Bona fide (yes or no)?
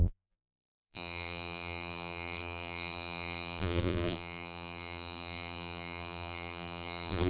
no